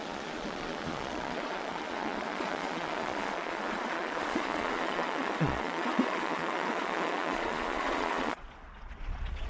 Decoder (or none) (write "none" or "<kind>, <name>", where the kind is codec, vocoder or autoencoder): vocoder, Vocos